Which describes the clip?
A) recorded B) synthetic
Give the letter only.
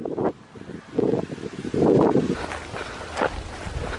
A